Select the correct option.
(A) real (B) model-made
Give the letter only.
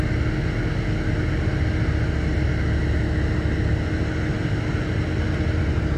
A